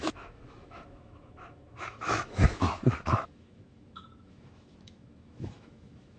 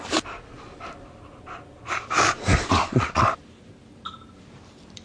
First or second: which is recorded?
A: second